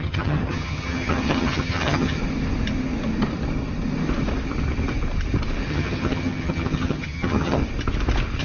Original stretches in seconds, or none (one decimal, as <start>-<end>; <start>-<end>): 2.2-5.7; 7.6-8.4